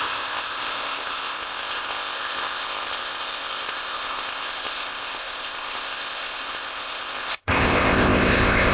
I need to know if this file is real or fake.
fake